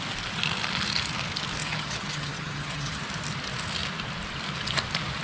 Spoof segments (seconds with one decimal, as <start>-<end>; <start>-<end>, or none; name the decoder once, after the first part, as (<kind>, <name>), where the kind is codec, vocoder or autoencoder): 1.6-3.0 (vocoder, HiFi-GAN)